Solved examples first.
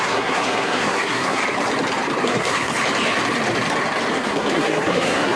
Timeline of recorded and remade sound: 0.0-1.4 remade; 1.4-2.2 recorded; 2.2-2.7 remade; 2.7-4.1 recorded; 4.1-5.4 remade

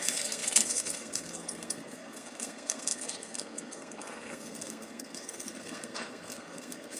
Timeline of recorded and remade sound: 0.0-7.0 remade

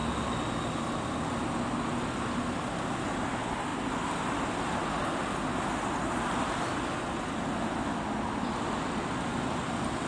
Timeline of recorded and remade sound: 0.0-10.1 recorded